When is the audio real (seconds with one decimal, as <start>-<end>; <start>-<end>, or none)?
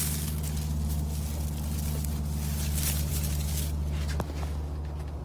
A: 0.0-5.2